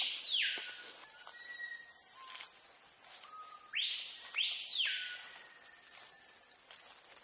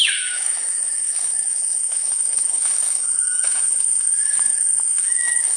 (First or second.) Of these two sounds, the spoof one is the second